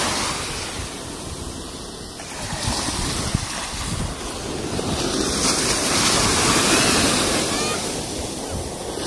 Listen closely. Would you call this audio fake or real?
real